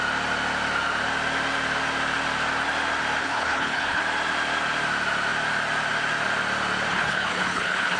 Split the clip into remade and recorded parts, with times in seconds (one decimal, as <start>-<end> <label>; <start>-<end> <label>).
0.0-3.2 recorded; 3.2-4.0 remade; 4.0-6.9 recorded; 6.9-8.0 remade